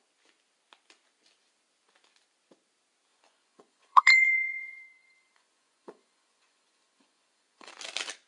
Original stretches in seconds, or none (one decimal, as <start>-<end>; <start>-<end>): 0.0-3.1; 7.7-8.3